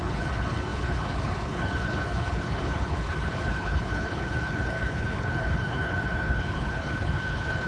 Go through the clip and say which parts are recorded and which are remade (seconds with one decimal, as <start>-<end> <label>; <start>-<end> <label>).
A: 0.0-7.7 remade